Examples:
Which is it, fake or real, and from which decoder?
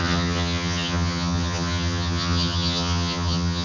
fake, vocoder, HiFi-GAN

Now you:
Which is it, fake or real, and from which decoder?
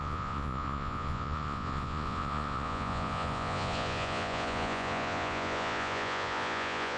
fake, vocoder, Vocos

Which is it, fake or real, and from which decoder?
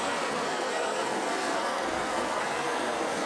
fake, codec, SNAC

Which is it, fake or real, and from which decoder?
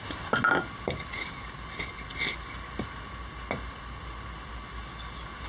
real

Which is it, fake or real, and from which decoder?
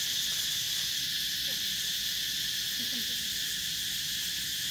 real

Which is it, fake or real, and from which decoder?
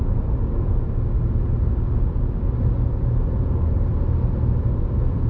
real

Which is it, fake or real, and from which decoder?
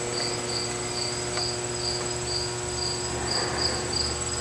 real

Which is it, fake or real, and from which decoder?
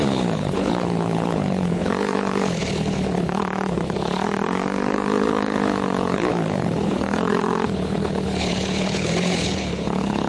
fake, codec, HILCodec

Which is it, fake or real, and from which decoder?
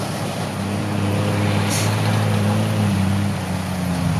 real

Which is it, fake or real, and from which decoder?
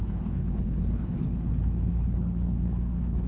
fake, codec, HILCodec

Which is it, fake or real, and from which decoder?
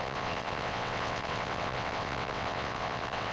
fake, vocoder, WaveNeXt